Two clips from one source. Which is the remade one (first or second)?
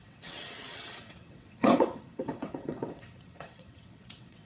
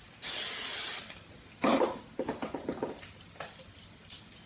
first